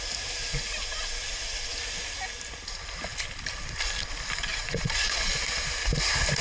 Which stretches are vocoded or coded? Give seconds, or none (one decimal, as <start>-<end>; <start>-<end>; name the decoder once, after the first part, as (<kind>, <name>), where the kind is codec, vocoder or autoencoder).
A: 0.4-1.7 (vocoder, Vocos); 4.5-5.3